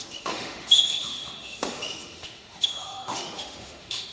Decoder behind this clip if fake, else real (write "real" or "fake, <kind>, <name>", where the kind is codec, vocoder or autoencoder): fake, autoencoder, DAC-VAE